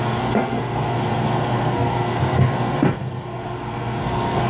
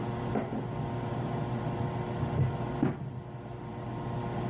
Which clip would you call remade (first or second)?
first